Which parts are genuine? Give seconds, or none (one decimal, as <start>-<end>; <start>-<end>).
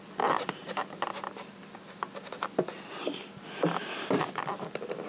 0.0-5.1